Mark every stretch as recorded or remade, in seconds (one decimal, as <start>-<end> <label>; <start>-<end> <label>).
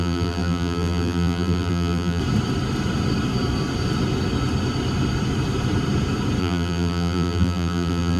0.0-2.2 remade; 2.2-6.4 recorded; 6.4-8.2 remade